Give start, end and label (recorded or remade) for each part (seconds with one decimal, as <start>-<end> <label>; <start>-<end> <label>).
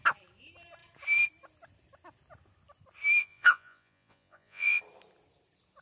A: 0.0-3.2 recorded; 3.2-4.8 remade; 4.8-5.8 recorded